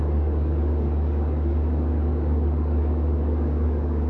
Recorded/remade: remade